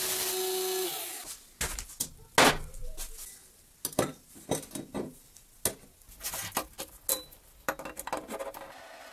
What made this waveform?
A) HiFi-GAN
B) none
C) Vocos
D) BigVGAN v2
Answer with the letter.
B